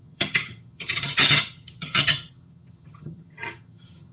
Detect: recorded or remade remade